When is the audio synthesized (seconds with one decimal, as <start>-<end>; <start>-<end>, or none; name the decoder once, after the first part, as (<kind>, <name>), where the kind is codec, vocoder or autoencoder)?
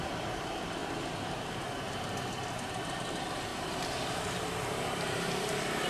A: 0.8-2.1 (vocoder, BigVGAN v2); 3.5-5.5